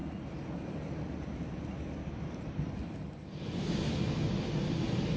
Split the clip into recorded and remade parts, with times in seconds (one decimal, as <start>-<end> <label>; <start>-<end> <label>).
0.0-5.2 recorded